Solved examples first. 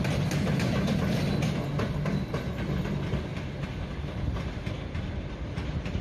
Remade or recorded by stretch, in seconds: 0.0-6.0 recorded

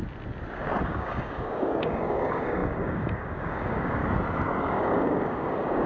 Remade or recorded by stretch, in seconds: 0.0-0.8 recorded; 0.8-4.0 remade; 4.0-4.6 recorded; 4.6-5.9 remade